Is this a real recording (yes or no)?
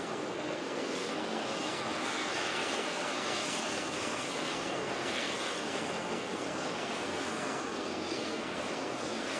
no